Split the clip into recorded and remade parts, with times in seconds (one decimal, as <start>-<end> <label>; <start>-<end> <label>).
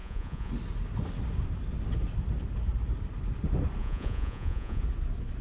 0.0-0.5 remade; 0.5-3.8 recorded; 3.8-4.8 remade; 4.8-5.4 recorded